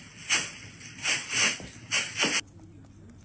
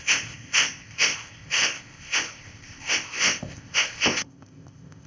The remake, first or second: second